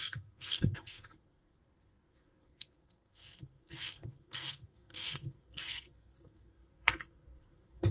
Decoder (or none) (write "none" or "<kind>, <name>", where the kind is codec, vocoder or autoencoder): codec, SNAC